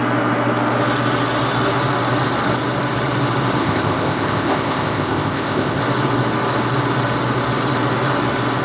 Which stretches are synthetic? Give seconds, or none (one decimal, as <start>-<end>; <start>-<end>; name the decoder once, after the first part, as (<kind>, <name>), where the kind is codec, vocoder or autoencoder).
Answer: 3.6-5.8 (codec, ZipCodec)

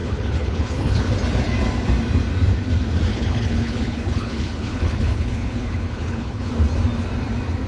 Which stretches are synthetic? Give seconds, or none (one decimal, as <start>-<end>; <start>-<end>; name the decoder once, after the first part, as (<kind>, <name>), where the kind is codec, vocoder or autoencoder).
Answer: 0.0-1.1 (codec, HILCodec); 3.1-6.5

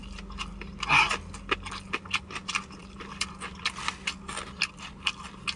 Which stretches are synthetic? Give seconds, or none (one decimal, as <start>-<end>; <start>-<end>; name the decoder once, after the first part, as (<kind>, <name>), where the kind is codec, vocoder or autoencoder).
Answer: none

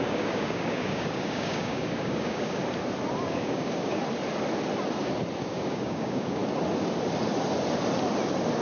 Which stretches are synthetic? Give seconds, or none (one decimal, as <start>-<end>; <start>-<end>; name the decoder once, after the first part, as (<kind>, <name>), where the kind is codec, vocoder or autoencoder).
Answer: 0.0-2.6 (codec, DAC); 3.2-4.0; 5.4-6.4

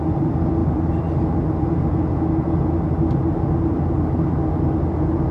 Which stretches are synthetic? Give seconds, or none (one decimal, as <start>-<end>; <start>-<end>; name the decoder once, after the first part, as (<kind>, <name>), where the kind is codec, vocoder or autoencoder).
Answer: none